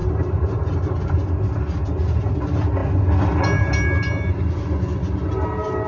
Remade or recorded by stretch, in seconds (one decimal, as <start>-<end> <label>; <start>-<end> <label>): 0.0-1.3 remade; 1.3-5.9 recorded